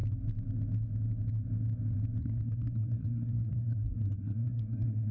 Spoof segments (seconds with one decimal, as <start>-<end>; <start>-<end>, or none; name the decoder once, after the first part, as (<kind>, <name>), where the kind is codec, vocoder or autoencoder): 2.2-5.1 (codec, SNAC)